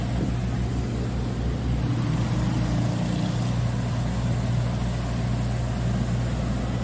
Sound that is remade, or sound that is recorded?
recorded